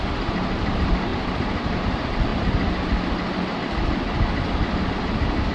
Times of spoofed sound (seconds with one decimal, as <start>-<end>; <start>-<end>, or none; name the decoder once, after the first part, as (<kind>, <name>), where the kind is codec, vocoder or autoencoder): 1.1-1.8 (vocoder, BigVGAN v2)